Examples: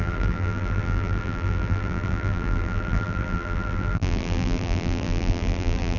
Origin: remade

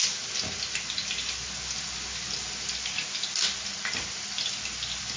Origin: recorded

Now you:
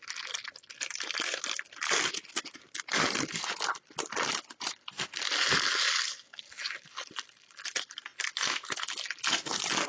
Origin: recorded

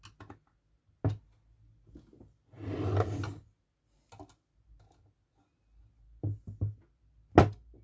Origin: recorded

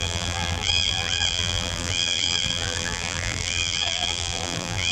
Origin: remade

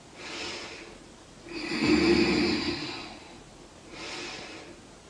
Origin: recorded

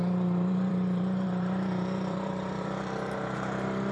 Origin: remade